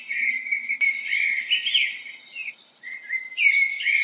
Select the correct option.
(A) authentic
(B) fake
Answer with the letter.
B